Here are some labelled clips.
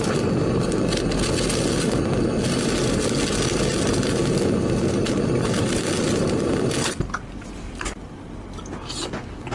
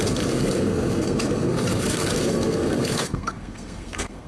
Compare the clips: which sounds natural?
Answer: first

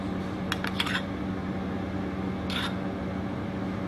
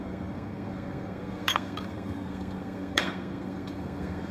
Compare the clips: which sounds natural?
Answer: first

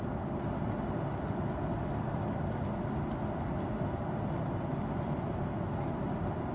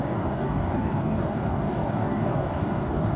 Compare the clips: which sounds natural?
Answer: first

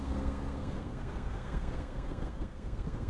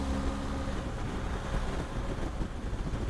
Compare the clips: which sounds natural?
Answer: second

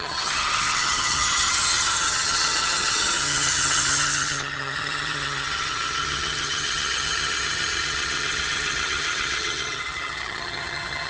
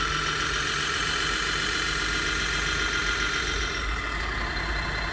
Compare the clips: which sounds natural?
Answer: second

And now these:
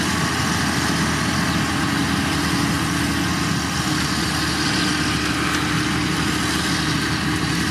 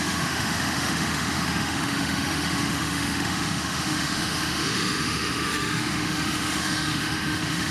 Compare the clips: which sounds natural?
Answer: first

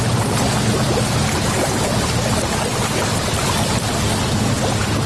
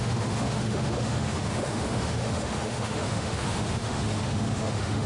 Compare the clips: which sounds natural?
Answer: first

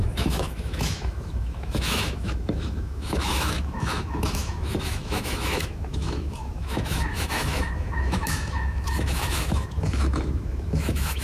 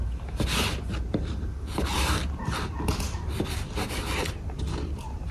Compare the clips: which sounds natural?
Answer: second